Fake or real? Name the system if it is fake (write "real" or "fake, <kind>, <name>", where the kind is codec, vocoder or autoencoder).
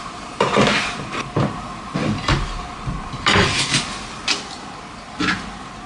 real